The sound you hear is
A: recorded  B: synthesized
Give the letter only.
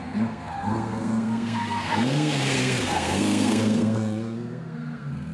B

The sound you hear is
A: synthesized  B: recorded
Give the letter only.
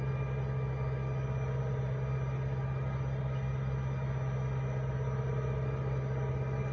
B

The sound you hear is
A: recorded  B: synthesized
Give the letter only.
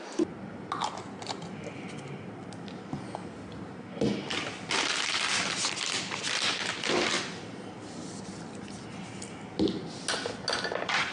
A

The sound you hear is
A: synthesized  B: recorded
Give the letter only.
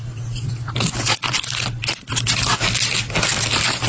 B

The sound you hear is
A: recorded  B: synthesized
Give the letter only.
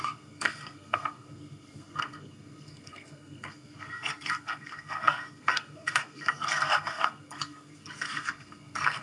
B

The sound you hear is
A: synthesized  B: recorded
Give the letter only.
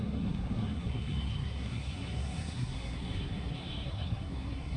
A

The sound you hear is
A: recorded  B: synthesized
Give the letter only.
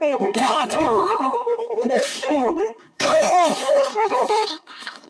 B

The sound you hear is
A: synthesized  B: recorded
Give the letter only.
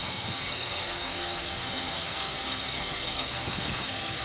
A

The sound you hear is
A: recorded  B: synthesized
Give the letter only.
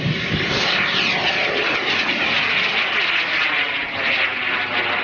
A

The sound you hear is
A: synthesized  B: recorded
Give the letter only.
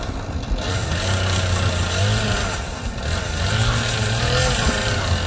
B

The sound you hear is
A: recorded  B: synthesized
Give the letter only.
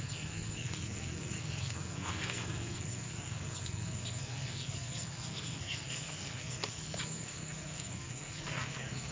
B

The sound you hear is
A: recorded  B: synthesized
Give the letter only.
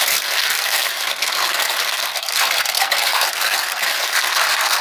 B